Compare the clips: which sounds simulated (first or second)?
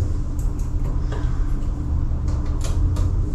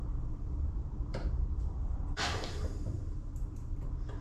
second